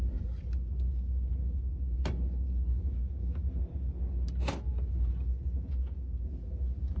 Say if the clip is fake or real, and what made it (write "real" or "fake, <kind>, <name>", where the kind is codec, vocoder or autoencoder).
real